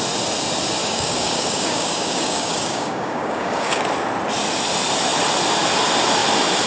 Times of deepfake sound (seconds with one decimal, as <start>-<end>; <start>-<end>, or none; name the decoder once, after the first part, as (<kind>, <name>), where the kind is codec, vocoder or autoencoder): 0.8-3.8 (codec, DAC)